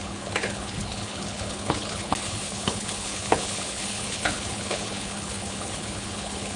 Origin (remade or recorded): remade